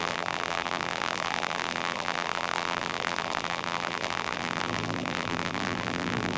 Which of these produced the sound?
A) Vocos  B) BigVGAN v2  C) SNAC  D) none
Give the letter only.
B